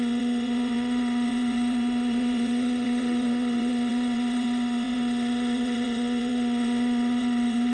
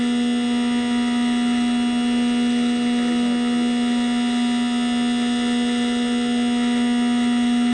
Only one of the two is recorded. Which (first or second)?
second